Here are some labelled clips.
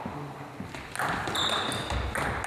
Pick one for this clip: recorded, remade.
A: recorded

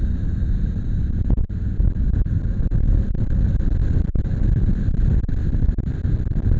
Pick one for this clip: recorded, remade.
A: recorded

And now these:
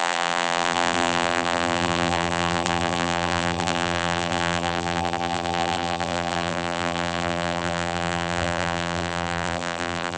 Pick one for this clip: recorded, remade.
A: remade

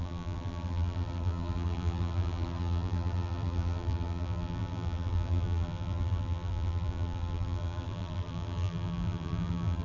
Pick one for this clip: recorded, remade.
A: remade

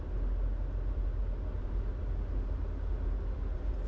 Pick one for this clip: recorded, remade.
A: recorded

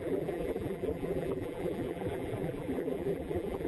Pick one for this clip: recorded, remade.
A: remade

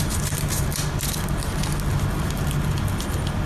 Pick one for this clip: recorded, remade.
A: recorded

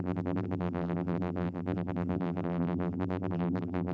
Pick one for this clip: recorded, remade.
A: remade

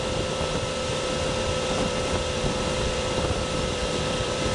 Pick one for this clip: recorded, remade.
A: remade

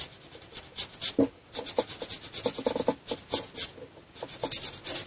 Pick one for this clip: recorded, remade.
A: recorded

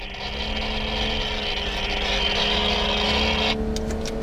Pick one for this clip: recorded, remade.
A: recorded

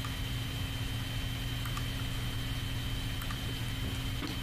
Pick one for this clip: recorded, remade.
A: recorded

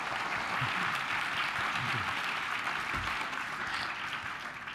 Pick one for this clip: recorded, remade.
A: recorded